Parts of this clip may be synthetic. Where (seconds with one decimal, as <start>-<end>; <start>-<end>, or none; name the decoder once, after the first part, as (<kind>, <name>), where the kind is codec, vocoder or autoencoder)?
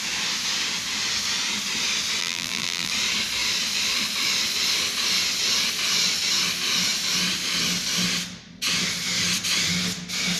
2.2-2.9 (vocoder, BigVGAN v2)